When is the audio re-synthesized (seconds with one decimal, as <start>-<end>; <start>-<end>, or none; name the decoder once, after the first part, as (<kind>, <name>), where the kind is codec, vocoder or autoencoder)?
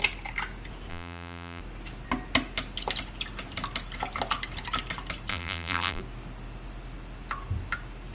0.9-1.6 (vocoder, BigVGAN v2); 5.3-6.0